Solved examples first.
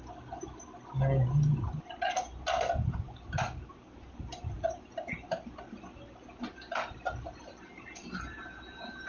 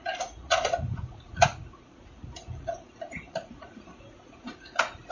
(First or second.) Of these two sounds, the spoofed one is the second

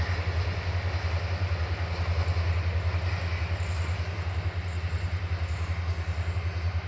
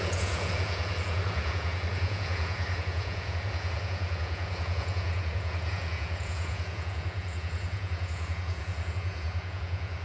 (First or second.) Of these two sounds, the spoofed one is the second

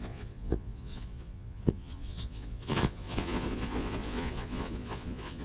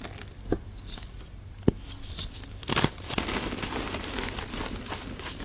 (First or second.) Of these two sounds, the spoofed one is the first